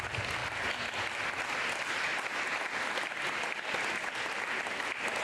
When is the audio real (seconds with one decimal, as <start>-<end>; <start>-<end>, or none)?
0.0-5.2